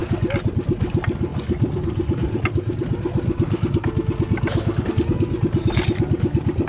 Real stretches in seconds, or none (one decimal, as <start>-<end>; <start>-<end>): 0.0-6.7